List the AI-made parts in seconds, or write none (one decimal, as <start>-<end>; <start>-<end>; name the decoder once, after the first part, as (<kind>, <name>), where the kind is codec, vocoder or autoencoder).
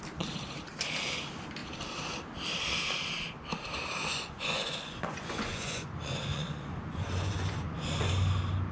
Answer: 4.0-8.1 (vocoder, Vocos)